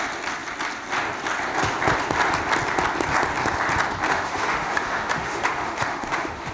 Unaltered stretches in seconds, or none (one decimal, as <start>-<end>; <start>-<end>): 0.0-4.1